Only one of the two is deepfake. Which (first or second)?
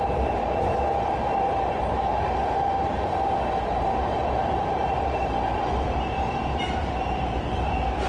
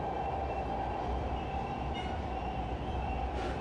first